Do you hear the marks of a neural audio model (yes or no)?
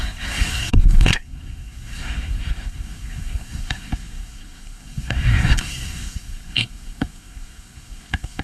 yes